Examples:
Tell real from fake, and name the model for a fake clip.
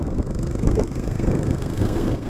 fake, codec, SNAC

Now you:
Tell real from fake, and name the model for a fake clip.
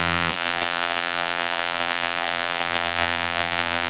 fake, vocoder, BigVGAN v2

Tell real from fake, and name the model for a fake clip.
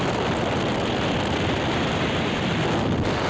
real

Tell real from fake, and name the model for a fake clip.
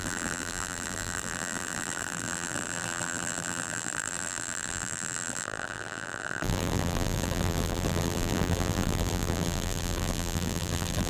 fake, vocoder, BigVGAN v2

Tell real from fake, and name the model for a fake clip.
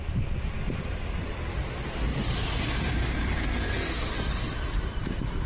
fake, vocoder, BigVGAN v2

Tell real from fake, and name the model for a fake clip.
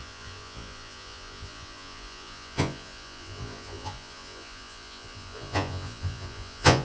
fake, vocoder, Vocos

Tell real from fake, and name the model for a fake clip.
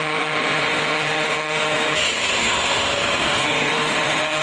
fake, autoencoder, DAC-VAE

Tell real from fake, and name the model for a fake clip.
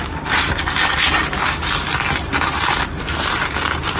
real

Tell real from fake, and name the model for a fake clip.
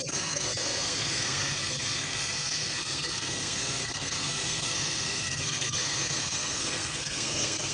fake, codec, SNAC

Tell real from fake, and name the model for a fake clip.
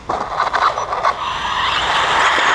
real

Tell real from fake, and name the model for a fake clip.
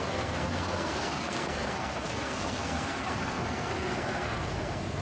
fake, codec, SNAC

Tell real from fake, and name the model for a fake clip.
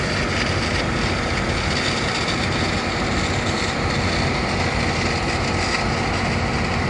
real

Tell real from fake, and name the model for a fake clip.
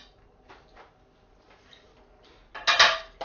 real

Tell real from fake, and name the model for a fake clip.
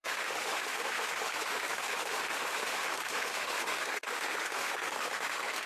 fake, autoencoder, DAC-VAE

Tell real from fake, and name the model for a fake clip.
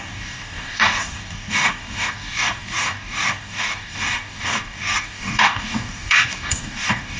fake, codec, DAC